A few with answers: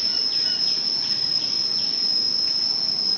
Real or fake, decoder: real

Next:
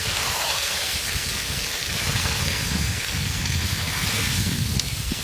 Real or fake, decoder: fake, codec, SNAC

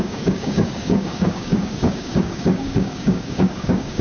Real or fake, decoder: fake, codec, DAC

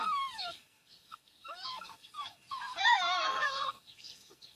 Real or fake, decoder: fake, codec, SNAC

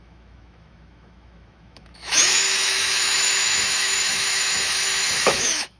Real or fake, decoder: fake, autoencoder, DAC-VAE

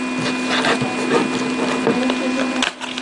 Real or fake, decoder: real